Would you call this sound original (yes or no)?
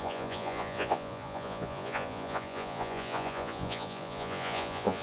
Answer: no